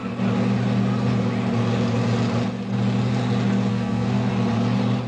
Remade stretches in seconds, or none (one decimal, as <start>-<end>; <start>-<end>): 3.7-4.3